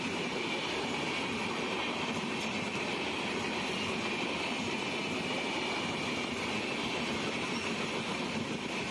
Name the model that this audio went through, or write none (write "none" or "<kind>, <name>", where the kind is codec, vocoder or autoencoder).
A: none